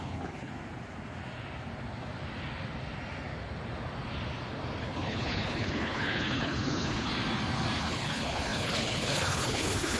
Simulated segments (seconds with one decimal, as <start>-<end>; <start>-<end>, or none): 0.0-0.5; 4.8-7.1; 7.8-10.0

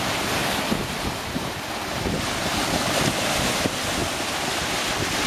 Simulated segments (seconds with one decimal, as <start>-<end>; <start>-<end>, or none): 0.0-0.4; 1.2-5.3

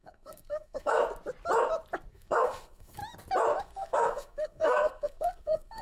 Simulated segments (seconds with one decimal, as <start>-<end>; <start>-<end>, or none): 0.0-1.0; 2.1-3.0; 3.6-5.8

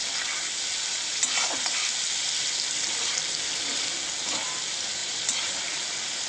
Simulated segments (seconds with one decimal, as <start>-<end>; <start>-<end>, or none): none

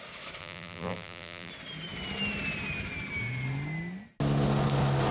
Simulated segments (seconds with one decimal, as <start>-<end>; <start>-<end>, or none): 0.4-1.5

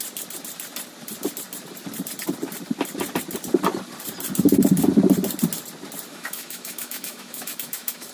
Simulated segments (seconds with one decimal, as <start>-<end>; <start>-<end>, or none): 6.1-8.1

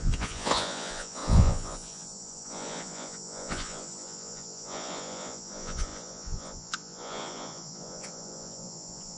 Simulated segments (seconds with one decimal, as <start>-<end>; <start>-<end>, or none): 0.0-9.2